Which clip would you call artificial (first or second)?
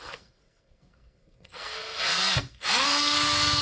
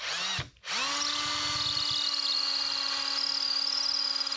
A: first